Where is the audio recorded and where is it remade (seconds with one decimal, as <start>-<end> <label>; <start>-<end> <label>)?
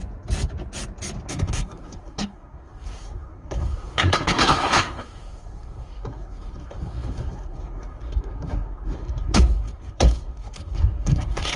0.0-1.3 recorded; 1.3-11.6 remade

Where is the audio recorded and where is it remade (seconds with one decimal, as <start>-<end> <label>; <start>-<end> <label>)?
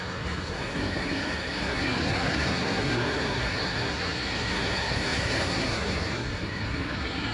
0.0-7.3 remade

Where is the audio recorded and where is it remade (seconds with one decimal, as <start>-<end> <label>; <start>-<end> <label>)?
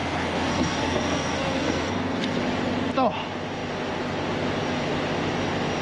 0.0-2.4 remade; 2.4-5.8 recorded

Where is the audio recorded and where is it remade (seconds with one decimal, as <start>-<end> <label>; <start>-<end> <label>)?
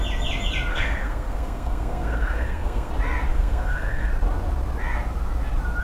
0.0-0.7 recorded; 0.7-2.9 remade; 2.9-3.3 recorded; 3.3-4.1 remade; 4.1-5.8 recorded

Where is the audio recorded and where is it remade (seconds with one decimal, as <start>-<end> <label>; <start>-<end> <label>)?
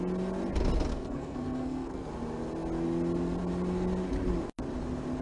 0.0-0.9 recorded; 0.9-2.1 remade; 2.1-5.2 recorded